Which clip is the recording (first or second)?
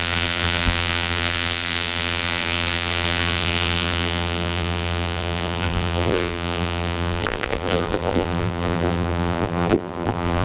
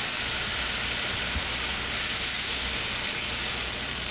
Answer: second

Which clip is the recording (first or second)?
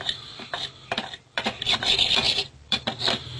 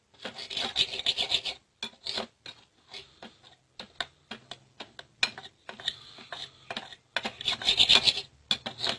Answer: second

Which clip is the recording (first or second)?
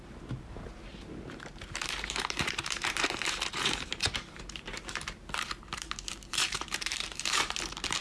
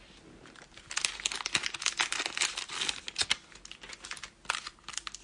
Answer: second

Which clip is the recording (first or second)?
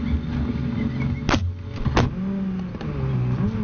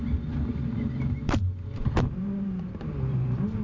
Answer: first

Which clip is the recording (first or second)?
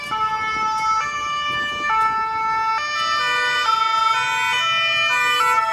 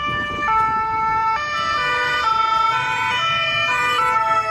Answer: first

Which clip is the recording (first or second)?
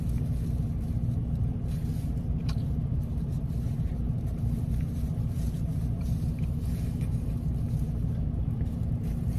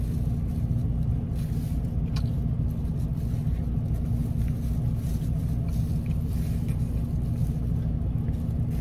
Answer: second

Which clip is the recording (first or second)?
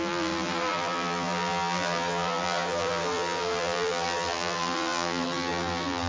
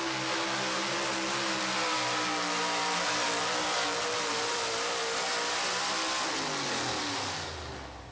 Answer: second